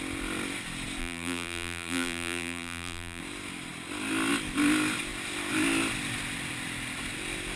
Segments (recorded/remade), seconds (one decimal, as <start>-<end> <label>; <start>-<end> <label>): 0.0-1.0 recorded; 1.0-3.2 remade; 3.2-7.6 recorded